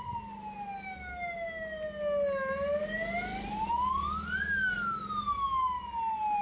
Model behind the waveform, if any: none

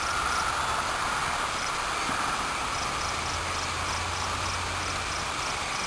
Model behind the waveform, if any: none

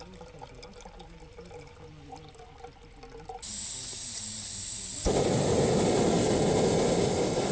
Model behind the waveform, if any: none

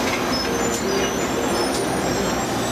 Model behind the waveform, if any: none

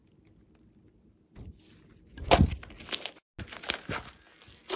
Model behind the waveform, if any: none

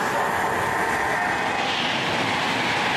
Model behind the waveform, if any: none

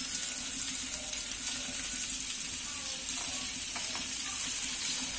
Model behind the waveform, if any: none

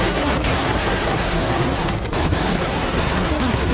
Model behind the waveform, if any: codec, SNAC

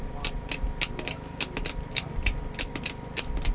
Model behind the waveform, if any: none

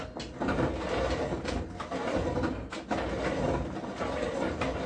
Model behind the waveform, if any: none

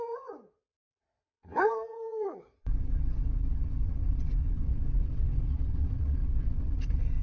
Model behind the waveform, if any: vocoder, WaveNeXt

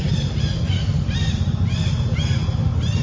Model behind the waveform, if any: none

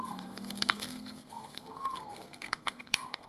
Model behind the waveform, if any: codec, SNAC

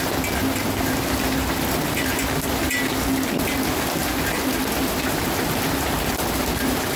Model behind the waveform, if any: none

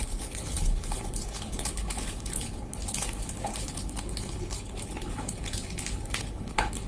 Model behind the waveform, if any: codec, HILCodec